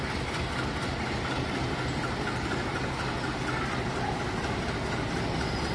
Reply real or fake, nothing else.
real